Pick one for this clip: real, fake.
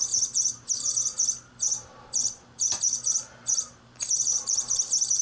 fake